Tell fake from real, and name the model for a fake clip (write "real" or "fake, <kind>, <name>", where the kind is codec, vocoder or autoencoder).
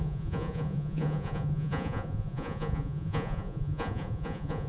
fake, vocoder, Vocos